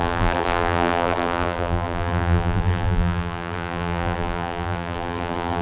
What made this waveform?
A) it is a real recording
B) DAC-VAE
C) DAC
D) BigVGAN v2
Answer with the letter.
D